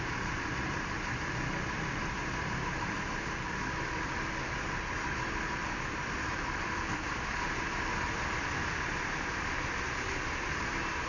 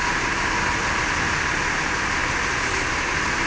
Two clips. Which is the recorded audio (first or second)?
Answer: second